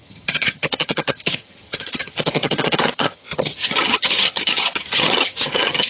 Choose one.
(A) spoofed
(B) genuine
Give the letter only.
A